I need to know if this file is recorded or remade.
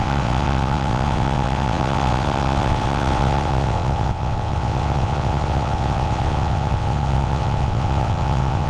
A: remade